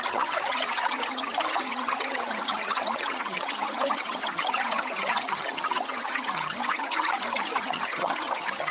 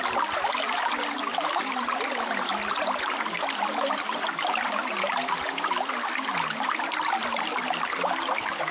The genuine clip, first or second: second